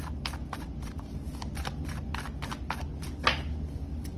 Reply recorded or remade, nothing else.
recorded